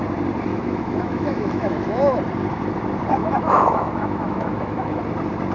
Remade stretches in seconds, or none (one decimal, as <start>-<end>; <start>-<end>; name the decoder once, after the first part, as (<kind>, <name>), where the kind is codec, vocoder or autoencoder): 0.5-2.2 (autoencoder, DAC-VAE); 3.2-5.0